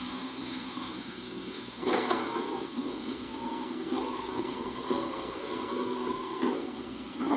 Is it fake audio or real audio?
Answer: fake